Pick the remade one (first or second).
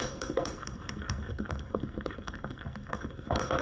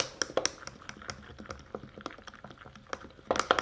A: first